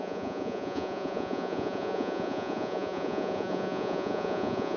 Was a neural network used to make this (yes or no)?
yes